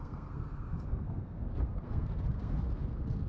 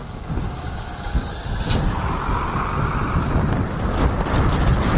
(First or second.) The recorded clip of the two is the second